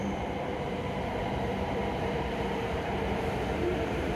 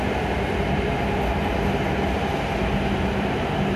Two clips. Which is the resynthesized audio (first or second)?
first